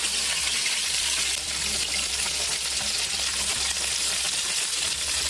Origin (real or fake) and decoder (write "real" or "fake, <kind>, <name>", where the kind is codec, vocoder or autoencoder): fake, vocoder, BigVGAN v2